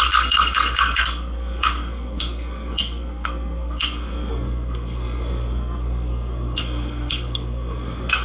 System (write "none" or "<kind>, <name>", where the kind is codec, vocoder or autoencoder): codec, SNAC